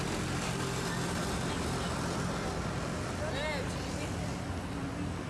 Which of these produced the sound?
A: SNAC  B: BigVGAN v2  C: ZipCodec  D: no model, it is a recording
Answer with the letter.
D